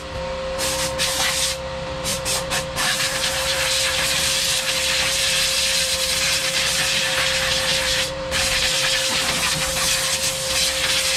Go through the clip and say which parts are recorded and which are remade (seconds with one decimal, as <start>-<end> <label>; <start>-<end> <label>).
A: 0.0-2.1 recorded; 2.1-7.0 remade; 7.0-7.7 recorded; 7.7-9.6 remade; 9.6-11.2 recorded